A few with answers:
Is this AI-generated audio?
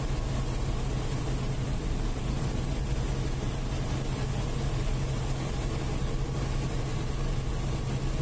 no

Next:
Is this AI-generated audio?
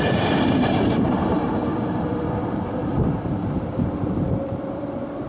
yes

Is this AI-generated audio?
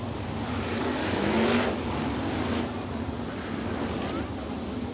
no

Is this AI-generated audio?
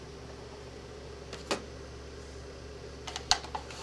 no